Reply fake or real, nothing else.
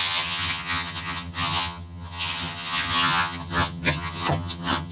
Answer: fake